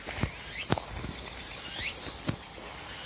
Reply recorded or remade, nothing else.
recorded